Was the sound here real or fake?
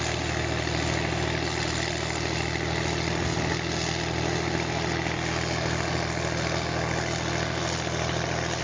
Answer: real